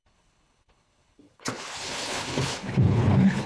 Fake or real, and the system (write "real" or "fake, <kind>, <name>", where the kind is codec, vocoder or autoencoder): fake, codec, HILCodec